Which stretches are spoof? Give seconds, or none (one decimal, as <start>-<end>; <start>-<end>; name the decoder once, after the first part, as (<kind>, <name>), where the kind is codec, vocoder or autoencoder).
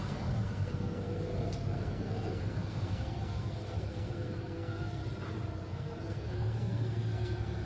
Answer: 0.0-5.0 (codec, SNAC); 5.5-7.6